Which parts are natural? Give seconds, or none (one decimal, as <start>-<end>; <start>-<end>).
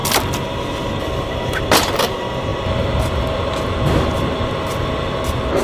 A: 0.0-5.6